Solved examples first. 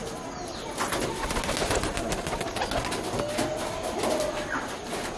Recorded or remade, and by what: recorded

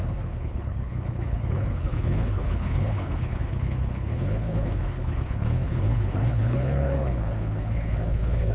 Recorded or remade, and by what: remade, codec, HILCodec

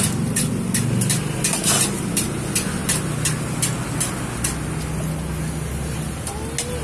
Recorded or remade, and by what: recorded